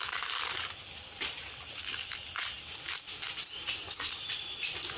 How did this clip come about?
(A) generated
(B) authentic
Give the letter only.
B